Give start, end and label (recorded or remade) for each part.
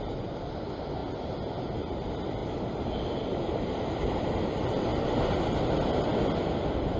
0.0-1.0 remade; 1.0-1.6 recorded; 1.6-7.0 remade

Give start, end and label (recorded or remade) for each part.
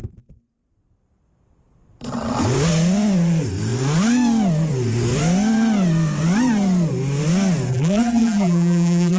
0.0-7.7 recorded; 7.7-9.2 remade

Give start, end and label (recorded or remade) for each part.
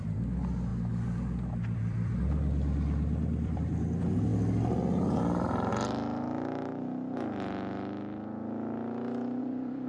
0.0-4.3 remade; 4.3-5.2 recorded; 5.2-5.7 remade; 5.7-9.4 recorded; 9.4-9.9 remade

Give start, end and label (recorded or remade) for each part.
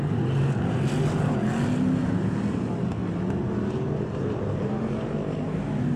0.0-6.0 recorded